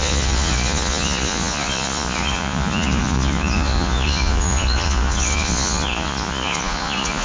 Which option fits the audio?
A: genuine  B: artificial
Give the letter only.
B